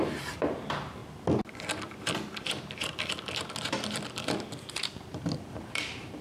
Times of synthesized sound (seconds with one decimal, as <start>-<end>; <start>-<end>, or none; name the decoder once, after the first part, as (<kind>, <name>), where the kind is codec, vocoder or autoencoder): 0.0-1.0 (vocoder, BigVGAN v2); 4.7-6.2